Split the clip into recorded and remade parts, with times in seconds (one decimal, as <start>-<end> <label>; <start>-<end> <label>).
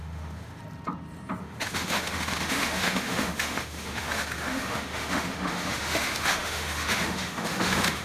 0.0-0.6 remade; 0.6-1.4 recorded; 1.4-8.0 remade